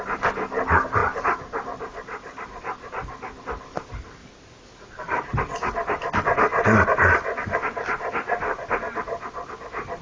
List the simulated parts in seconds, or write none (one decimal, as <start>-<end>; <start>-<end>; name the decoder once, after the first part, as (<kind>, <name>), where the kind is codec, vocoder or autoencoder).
1.0-3.4 (vocoder, BigVGAN v2); 4.2-5.3